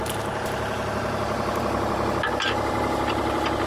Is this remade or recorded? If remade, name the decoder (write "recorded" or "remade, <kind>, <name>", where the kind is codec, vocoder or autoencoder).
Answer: recorded